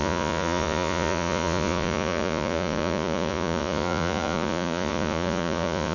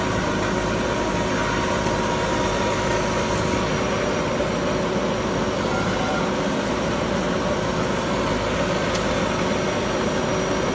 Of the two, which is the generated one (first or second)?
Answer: first